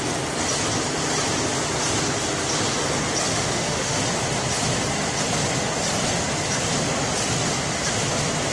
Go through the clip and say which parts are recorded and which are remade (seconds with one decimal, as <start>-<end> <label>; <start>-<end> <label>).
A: 0.0-3.3 recorded; 3.3-4.0 remade; 4.0-8.5 recorded